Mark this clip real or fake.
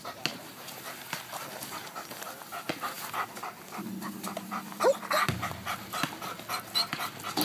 real